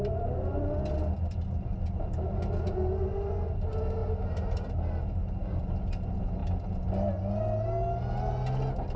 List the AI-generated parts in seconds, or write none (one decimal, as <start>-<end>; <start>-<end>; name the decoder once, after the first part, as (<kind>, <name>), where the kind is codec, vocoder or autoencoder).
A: none